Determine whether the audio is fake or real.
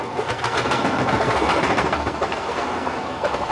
fake